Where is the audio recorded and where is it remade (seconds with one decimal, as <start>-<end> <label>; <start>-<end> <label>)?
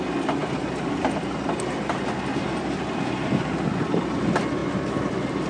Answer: 0.0-5.5 recorded